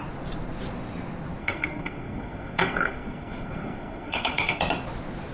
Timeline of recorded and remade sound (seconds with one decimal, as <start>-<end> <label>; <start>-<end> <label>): 0.0-1.4 recorded; 1.4-4.6 remade; 4.6-5.3 recorded